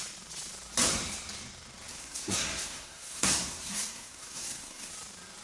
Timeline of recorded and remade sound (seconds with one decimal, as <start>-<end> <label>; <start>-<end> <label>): 0.0-1.9 recorded; 1.9-4.9 remade; 4.9-5.4 recorded